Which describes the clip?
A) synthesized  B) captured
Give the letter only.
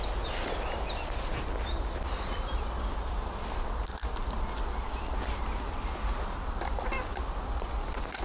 B